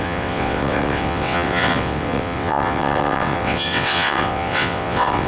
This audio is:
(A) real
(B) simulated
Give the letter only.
B